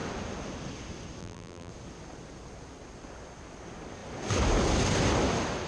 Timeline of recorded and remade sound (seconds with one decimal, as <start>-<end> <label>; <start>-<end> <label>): 0.0-1.2 recorded; 1.2-1.7 remade; 1.7-5.7 recorded